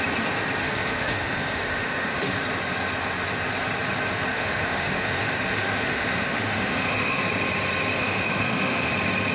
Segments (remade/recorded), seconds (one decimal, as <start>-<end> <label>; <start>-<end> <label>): 0.0-0.6 recorded; 0.6-2.4 remade; 2.4-4.3 recorded; 4.3-7.2 remade; 7.2-8.0 recorded; 8.0-8.9 remade; 8.9-9.3 recorded